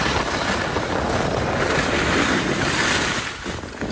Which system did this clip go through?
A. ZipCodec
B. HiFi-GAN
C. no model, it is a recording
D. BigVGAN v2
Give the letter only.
C